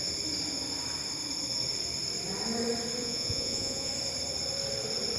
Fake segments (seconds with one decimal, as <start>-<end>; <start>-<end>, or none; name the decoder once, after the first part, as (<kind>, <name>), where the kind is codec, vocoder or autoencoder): 3.0-3.9 (vocoder, Vocos)